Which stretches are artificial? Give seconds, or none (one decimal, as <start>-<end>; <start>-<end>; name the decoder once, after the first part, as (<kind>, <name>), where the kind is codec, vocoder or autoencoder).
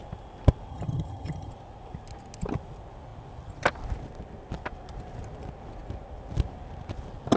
0.7-1.5 (vocoder, HiFi-GAN)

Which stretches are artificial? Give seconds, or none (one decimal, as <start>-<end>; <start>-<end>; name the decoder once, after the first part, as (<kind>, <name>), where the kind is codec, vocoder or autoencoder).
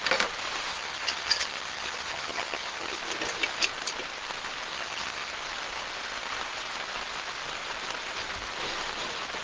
0.7-3.0 (vocoder, HiFi-GAN); 4.7-5.3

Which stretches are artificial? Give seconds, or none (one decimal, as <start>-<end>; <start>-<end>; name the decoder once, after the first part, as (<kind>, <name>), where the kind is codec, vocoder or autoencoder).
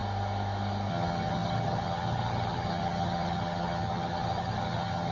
0.9-5.1 (vocoder, HiFi-GAN)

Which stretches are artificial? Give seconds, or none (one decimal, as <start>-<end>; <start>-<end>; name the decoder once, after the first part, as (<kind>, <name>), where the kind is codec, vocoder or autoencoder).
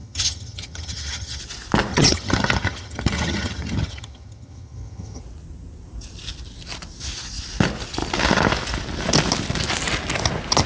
0.0-1.4 (vocoder, HiFi-GAN); 1.9-5.2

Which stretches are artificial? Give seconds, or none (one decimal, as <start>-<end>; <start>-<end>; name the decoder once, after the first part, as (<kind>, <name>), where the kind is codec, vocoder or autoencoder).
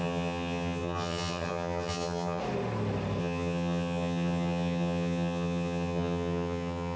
0.0-2.4 (vocoder, HiFi-GAN); 3.2-7.0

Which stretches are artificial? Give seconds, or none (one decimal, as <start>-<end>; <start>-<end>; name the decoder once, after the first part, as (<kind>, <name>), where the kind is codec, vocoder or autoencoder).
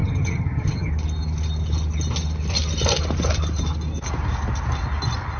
0.0-0.9 (vocoder, HiFi-GAN)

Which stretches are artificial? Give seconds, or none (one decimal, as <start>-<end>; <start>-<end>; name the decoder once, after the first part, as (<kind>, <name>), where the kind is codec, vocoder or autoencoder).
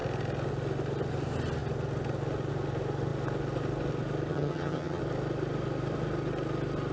4.3-5.0 (vocoder, HiFi-GAN)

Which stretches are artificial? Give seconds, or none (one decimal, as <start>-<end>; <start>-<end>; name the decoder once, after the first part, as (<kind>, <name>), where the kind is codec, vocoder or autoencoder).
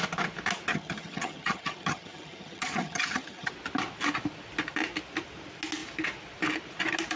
0.7-3.5 (vocoder, HiFi-GAN)